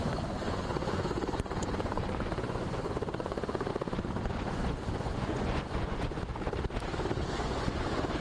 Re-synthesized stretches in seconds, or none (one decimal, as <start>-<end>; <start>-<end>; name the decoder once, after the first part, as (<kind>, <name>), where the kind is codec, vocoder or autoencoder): 0.0-3.7 (vocoder, Vocos); 4.2-6.3; 7.3-8.2